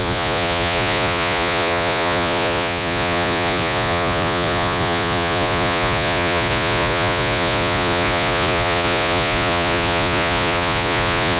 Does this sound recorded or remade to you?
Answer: remade